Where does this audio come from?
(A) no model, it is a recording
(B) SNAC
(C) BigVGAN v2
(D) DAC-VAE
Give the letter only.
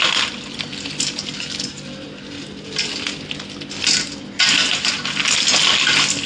A